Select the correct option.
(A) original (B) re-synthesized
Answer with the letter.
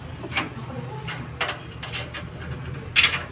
A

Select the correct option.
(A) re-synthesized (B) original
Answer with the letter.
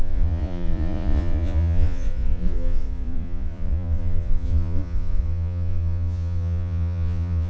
A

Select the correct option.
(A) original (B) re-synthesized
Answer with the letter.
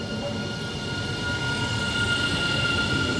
A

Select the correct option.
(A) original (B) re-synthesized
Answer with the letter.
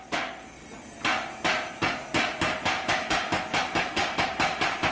A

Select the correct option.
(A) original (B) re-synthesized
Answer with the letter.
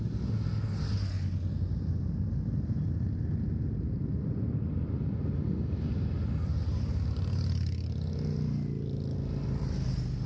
A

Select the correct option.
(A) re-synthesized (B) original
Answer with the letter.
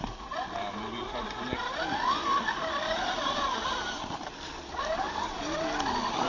B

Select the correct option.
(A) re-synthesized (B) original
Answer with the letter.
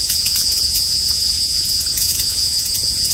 A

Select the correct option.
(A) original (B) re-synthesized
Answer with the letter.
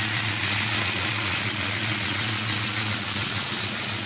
B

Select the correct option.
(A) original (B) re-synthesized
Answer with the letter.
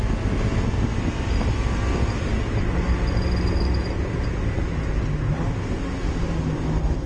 A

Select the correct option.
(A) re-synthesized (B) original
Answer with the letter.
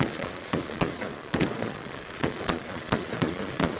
A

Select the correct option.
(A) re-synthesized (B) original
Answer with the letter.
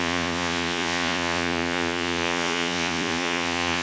A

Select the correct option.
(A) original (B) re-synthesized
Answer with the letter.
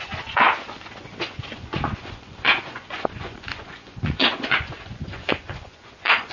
B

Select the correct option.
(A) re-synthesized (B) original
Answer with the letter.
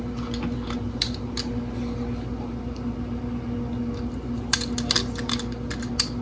B